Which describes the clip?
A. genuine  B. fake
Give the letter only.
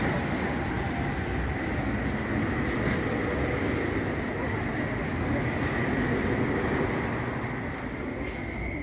A